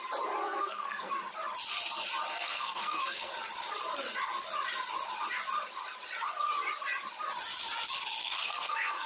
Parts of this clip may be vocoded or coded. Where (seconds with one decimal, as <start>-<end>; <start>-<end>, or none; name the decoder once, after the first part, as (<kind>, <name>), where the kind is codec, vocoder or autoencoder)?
0.4-1.1 (codec, SNAC); 2.3-3.3; 8.2-9.1